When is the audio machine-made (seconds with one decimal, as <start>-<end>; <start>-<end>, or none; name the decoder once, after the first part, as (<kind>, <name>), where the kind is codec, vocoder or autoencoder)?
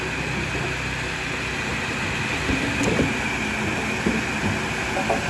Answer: none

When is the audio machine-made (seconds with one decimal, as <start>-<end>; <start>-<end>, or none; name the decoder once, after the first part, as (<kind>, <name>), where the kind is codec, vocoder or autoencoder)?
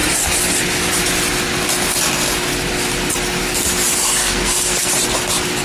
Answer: 4.2-4.9 (codec, SNAC)